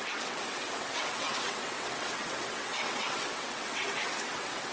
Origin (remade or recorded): remade